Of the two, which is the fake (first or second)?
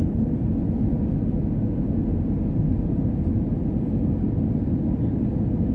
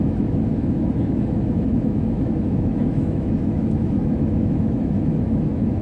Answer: second